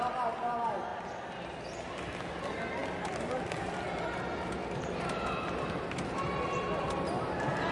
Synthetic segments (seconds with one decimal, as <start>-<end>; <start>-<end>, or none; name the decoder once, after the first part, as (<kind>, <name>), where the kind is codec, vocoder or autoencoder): none